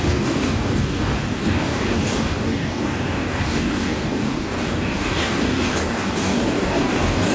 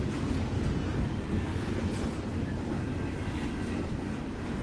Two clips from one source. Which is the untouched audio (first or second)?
second